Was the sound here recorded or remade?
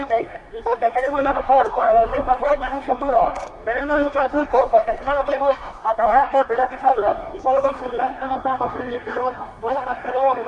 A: remade